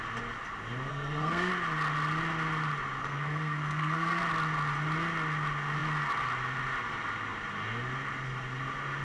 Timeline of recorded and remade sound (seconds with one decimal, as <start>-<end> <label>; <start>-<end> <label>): 0.0-0.9 recorded; 0.9-1.5 remade; 1.5-3.0 recorded; 3.0-4.2 remade; 4.2-9.0 recorded